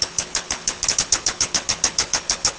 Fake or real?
fake